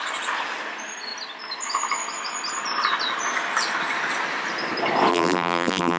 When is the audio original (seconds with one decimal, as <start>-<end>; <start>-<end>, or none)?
0.0-5.1